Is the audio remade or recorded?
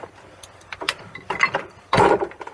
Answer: recorded